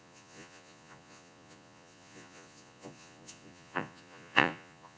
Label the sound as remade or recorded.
remade